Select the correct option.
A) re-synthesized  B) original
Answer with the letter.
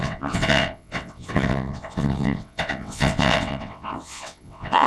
A